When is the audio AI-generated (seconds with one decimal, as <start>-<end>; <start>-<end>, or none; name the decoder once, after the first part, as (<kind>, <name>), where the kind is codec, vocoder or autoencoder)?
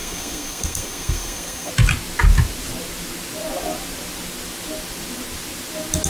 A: 0.0-1.7 (codec, SNAC)